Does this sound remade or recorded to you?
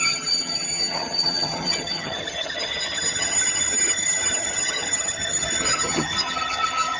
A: remade